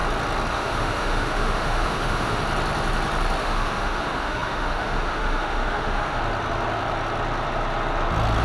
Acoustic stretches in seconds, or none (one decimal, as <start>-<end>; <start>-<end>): 0.0-0.5; 2.4-3.4; 6.2-8.4

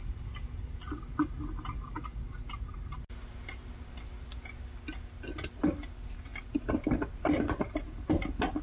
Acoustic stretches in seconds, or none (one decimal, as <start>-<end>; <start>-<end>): 0.0-8.6

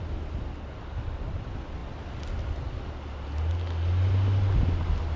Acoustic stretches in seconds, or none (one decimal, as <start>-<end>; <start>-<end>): 0.0-5.2

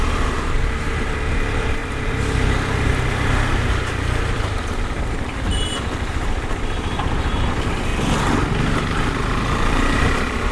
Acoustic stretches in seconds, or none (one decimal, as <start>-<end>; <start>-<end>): 7.9-8.8